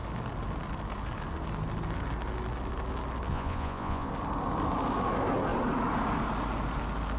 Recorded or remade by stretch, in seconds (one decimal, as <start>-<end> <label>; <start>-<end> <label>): 0.0-3.3 recorded; 3.3-4.1 remade; 4.1-7.2 recorded